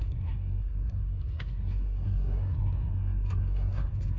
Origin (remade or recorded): remade